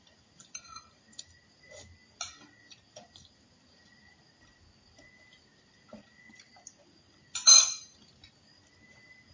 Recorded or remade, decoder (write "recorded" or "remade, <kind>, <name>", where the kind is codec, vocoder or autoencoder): recorded